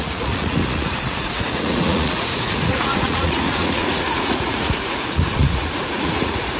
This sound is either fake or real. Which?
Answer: fake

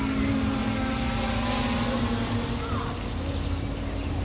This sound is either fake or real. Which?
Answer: real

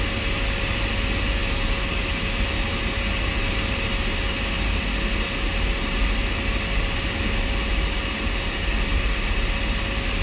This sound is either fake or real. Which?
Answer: real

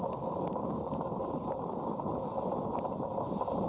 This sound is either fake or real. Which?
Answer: real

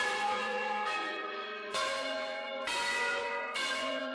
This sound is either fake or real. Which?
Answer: fake